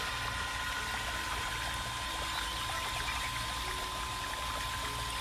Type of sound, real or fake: real